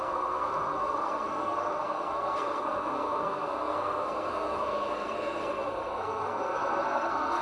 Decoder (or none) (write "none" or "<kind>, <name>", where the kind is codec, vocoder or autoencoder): codec, SNAC